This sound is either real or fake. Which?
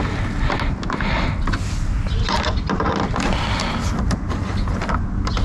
real